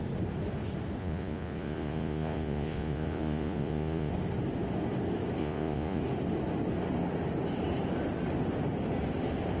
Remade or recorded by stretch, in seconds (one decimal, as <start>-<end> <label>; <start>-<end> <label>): 0.0-1.0 recorded; 1.0-4.1 remade; 4.1-5.4 recorded; 5.4-6.0 remade; 6.0-9.6 recorded